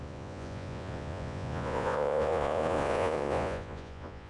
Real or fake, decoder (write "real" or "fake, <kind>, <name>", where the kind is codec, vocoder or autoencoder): fake, vocoder, Vocos